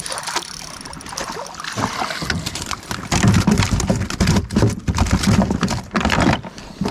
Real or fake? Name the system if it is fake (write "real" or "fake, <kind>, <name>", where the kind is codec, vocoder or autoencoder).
real